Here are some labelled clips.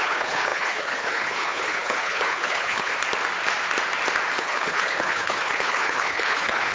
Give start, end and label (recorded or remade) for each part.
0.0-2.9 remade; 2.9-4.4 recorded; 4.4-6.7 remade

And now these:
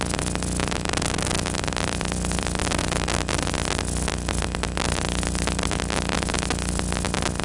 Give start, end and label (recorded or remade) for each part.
0.0-7.4 recorded